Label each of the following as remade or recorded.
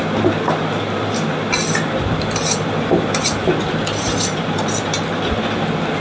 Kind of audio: recorded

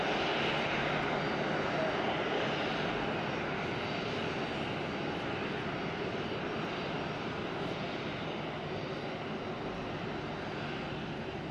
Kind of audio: recorded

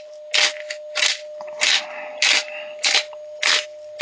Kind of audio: recorded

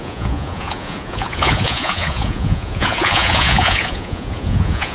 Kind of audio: remade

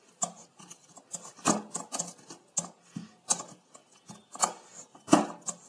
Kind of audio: recorded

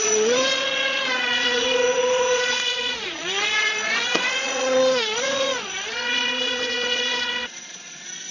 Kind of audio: remade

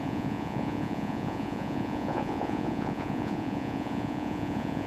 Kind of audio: remade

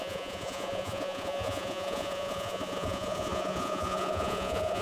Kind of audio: remade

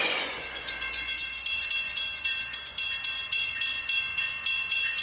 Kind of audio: remade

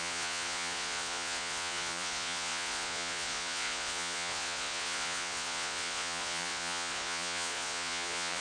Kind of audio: remade